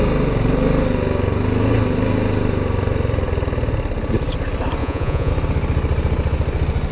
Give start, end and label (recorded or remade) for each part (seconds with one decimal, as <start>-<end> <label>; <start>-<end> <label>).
0.0-4.8 recorded; 4.8-5.3 remade; 5.3-6.9 recorded